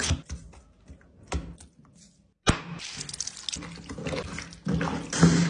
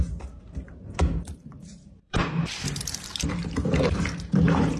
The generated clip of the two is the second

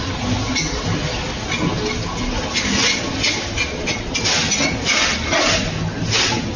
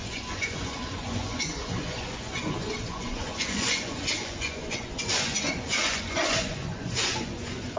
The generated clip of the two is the second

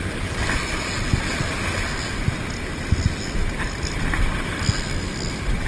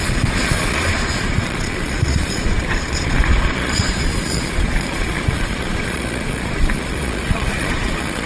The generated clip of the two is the second